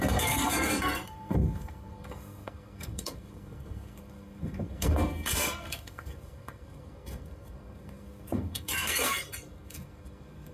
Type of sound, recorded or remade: remade